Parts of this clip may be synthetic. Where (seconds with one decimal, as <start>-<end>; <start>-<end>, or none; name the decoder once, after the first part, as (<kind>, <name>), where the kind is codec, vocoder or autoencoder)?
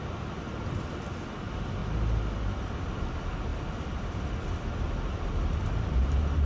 none